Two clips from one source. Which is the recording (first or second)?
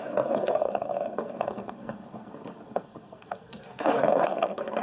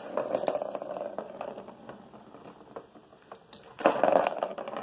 second